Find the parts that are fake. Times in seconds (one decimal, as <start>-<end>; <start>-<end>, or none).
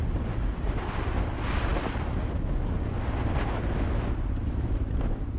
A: none